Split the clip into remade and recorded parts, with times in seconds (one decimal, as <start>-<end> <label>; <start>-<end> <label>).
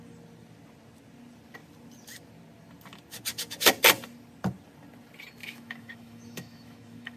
0.0-5.4 recorded; 5.4-7.2 remade